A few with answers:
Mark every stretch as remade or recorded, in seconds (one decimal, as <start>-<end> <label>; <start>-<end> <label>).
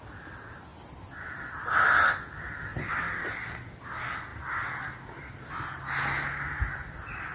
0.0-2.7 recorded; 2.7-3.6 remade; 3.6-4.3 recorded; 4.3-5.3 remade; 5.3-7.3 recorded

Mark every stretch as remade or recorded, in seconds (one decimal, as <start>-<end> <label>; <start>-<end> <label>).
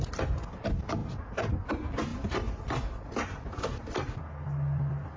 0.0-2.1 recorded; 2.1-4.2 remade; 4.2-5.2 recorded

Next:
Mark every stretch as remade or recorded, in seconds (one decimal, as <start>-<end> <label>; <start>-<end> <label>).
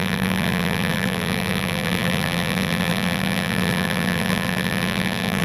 0.0-5.4 remade